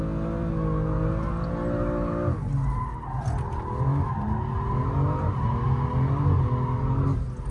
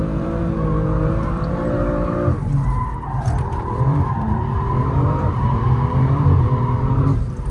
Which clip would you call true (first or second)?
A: first